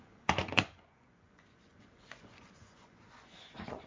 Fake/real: fake